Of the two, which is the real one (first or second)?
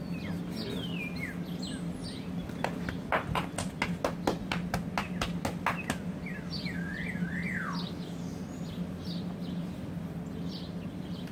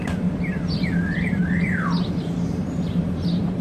first